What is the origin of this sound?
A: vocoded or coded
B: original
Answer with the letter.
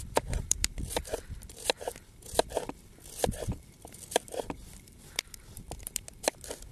A